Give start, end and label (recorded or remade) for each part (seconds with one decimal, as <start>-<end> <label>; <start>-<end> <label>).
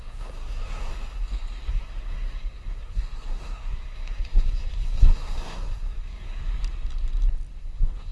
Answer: 0.0-0.9 remade; 0.9-1.7 recorded; 1.7-6.5 remade; 6.5-7.6 recorded; 7.6-8.1 remade